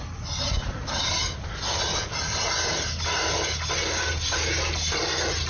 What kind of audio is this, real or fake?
real